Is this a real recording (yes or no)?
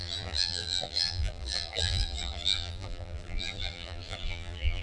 no